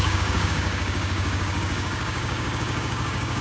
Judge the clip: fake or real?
fake